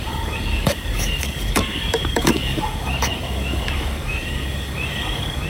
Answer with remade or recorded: remade